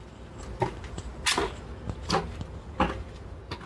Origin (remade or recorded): recorded